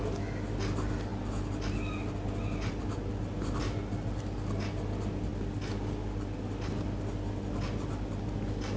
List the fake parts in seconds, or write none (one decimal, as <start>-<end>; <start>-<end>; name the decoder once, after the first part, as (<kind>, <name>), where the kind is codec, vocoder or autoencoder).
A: none